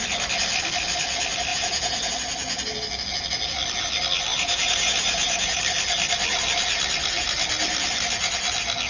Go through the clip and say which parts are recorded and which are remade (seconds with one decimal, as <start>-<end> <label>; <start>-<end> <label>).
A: 0.0-1.5 recorded; 1.5-2.1 remade; 2.1-4.3 recorded; 4.3-5.6 remade; 5.6-8.9 recorded